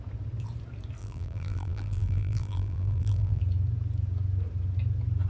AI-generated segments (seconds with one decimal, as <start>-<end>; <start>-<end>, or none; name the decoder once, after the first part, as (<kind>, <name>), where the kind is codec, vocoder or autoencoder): 1.0-3.4 (vocoder, BigVGAN v2)